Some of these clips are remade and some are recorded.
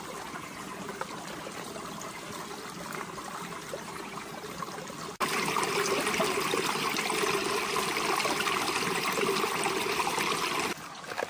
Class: recorded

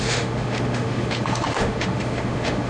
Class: remade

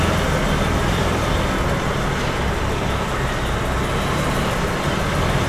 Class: recorded